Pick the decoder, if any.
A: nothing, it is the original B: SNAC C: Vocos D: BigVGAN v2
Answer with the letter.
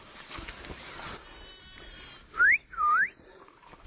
D